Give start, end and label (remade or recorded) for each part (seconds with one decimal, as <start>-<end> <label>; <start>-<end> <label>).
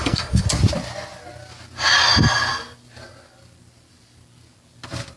0.0-0.5 remade; 0.5-5.2 recorded